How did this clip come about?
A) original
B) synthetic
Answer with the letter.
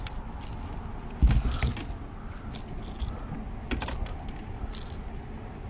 A